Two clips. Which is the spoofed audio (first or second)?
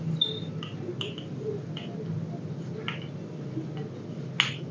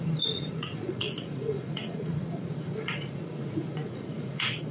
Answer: second